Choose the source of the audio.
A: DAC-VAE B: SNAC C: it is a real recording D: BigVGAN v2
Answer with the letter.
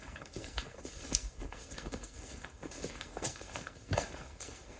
B